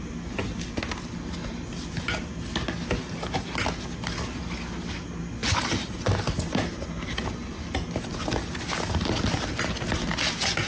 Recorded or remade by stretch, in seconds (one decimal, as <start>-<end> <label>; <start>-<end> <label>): 0.0-10.7 recorded